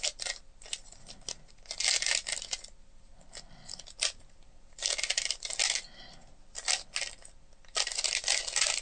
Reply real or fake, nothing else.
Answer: real